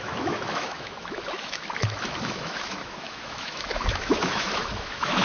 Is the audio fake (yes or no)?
yes